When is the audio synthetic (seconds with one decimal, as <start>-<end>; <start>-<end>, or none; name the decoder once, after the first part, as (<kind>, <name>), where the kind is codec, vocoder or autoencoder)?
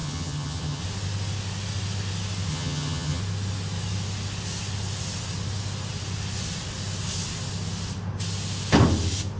0.0-0.8 (vocoder, HiFi-GAN); 2.5-3.2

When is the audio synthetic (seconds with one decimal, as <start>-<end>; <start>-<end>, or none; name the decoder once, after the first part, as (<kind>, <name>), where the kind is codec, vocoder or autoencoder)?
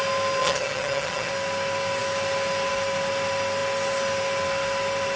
0.4-1.3 (vocoder, HiFi-GAN)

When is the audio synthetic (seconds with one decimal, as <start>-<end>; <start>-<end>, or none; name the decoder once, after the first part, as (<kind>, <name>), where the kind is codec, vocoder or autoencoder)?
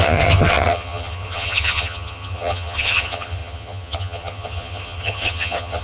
0.0-5.8 (vocoder, HiFi-GAN)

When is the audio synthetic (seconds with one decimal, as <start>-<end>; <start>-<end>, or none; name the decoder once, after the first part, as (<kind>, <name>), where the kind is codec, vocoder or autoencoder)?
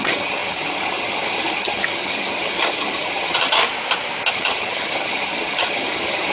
0.0-3.6 (vocoder, HiFi-GAN); 4.3-6.3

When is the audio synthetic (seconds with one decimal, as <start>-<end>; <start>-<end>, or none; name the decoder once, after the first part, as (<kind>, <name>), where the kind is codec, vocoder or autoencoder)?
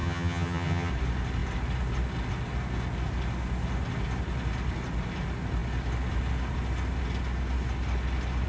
0.0-0.9 (vocoder, HiFi-GAN)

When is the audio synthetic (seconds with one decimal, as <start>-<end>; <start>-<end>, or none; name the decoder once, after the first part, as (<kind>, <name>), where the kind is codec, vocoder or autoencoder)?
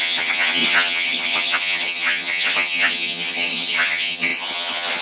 0.0-5.0 (vocoder, HiFi-GAN)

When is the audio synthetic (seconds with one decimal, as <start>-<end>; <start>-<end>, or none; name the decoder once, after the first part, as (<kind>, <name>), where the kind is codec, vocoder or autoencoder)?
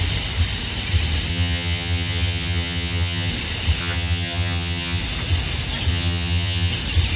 1.3-3.3 (vocoder, HiFi-GAN); 3.8-5.0; 5.9-6.7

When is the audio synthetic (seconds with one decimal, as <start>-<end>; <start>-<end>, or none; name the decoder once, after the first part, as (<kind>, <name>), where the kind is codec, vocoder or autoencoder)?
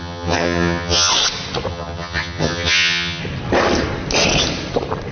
0.0-1.1 (vocoder, HiFi-GAN); 1.7-3.2